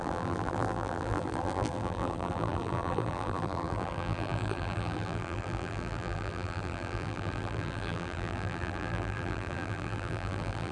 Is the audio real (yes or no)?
no